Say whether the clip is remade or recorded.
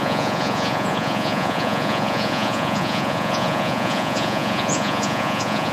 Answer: remade